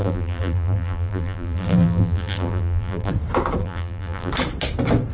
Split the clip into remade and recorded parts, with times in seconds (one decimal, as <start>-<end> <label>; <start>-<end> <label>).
0.0-3.1 remade; 3.1-3.6 recorded; 3.6-4.3 remade; 4.3-5.1 recorded